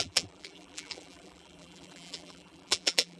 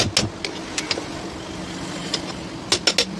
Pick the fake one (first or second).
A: first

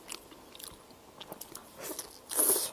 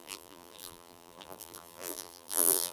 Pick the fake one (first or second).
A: second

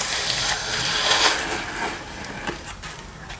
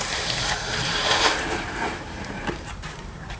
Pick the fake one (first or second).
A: second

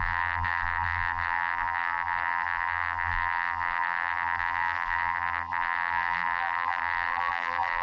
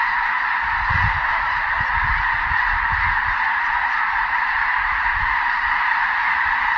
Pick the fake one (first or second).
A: first